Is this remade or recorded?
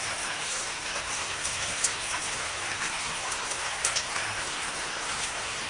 remade